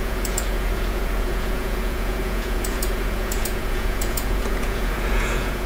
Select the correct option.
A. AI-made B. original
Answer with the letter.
A